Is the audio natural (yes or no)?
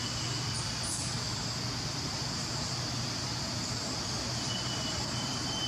no